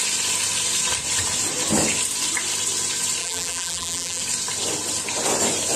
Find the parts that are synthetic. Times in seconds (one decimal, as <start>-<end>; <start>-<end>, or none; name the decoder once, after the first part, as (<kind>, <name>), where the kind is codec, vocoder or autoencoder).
3.2-4.2 (vocoder, BigVGAN v2)